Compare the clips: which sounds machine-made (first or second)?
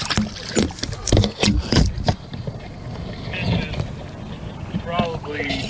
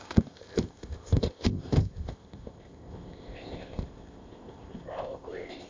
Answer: second